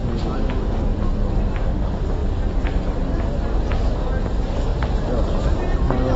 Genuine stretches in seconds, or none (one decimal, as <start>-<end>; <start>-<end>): 1.0-4.7